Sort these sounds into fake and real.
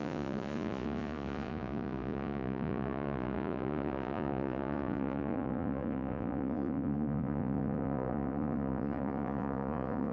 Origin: fake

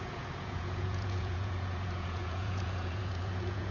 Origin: fake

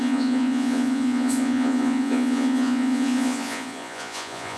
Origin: fake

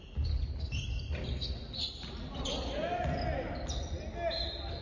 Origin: real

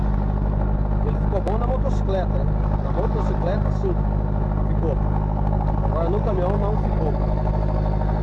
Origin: real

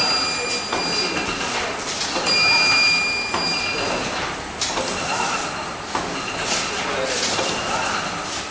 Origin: real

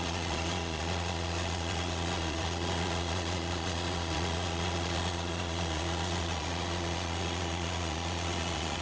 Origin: fake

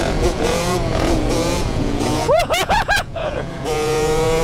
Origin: fake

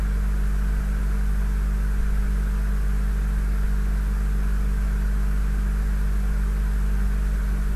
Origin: real